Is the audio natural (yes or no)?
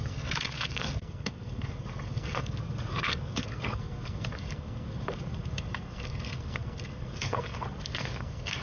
no